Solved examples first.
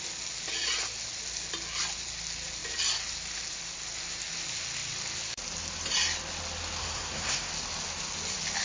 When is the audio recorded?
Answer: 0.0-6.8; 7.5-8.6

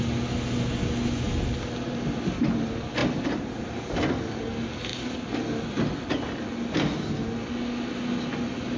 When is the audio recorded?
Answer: 0.0-3.0; 3.8-8.8

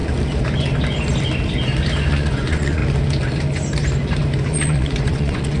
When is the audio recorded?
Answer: 0.0-2.1; 2.8-4.5

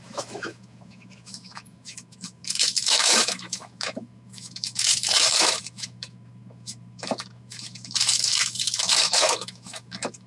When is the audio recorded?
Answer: none

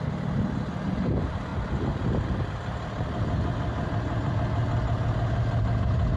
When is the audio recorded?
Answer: 0.0-6.2

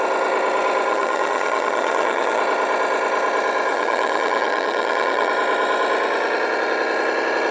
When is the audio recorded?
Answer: 0.0-0.9; 2.4-3.7; 5.3-7.5